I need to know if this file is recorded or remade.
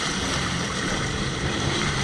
remade